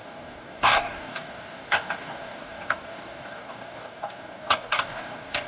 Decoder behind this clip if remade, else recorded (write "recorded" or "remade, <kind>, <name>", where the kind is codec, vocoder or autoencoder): remade, codec, DAC